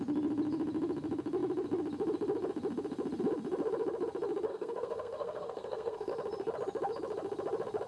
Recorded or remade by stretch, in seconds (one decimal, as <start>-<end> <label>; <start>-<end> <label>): 0.0-4.5 recorded; 4.5-6.1 remade; 6.1-7.9 recorded